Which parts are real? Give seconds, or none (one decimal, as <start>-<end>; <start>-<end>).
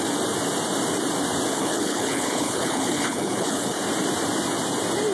0.0-1.5; 3.8-5.1